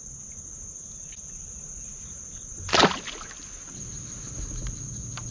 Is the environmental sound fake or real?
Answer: real